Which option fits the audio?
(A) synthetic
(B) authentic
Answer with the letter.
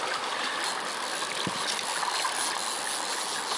B